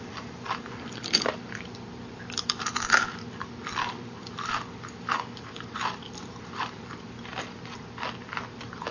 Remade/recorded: remade